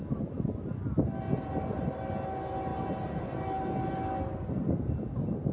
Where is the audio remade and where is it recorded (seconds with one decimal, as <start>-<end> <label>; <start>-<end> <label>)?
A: 0.0-5.5 recorded